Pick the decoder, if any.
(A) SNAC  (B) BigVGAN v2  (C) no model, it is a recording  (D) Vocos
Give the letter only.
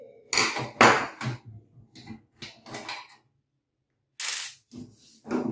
C